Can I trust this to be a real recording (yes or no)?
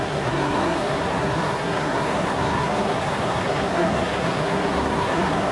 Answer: no